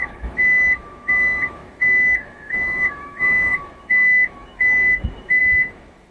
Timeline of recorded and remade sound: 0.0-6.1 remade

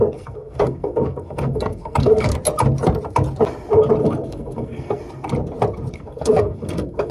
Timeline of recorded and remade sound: 0.0-2.3 remade; 2.3-4.0 recorded; 4.0-5.0 remade; 5.0-5.9 recorded; 5.9-7.1 remade